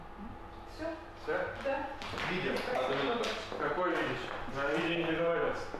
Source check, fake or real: real